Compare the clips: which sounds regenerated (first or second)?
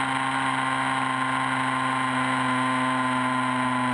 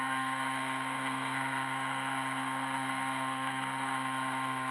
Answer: second